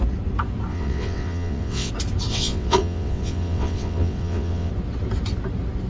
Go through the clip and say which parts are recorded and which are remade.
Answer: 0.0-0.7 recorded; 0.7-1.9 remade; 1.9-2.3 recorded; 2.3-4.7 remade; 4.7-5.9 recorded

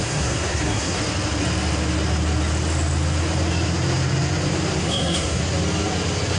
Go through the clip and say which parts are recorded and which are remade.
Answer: 0.0-1.0 remade; 1.0-4.8 recorded; 4.8-5.4 remade; 5.4-6.4 recorded

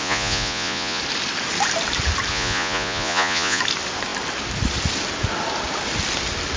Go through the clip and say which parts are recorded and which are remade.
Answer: 0.0-1.0 remade; 1.0-2.3 recorded; 2.3-3.6 remade; 3.6-6.6 recorded

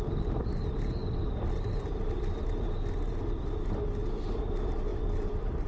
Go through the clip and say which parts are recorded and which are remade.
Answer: 0.0-1.0 recorded; 1.0-1.9 remade; 1.9-4.0 recorded; 4.0-4.5 remade; 4.5-4.9 recorded; 4.9-5.7 remade